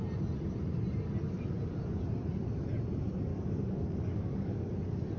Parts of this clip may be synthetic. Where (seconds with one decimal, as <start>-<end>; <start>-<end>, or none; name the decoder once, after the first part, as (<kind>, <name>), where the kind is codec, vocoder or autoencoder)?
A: 3.3-4.6 (codec, DAC)